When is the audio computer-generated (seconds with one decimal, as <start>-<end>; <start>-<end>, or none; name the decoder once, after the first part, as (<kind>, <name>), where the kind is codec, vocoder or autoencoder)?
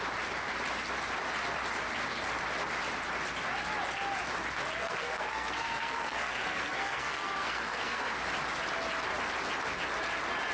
4.8-8.2 (codec, SNAC)